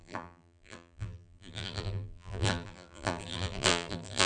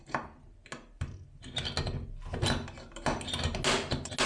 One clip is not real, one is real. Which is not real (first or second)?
first